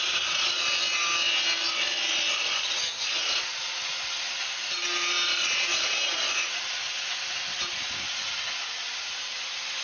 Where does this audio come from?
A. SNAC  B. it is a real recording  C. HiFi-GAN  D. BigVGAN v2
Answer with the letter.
B